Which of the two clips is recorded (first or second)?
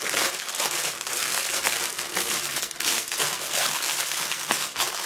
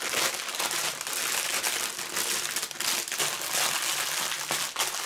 second